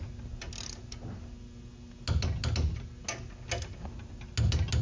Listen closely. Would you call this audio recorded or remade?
recorded